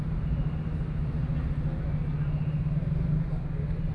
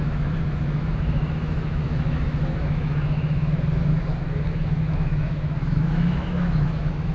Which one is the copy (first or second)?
second